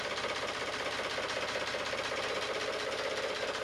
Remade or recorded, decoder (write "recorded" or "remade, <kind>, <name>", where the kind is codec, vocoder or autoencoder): recorded